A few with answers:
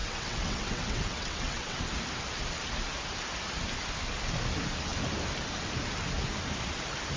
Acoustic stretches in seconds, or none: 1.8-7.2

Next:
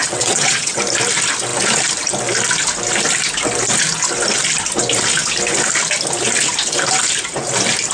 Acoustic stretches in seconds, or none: 0.8-7.9

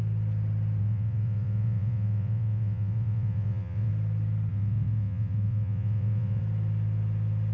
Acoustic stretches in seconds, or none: 0.0-0.8; 3.9-4.5; 6.4-7.5

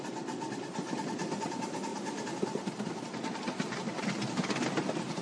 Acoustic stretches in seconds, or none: 0.0-5.2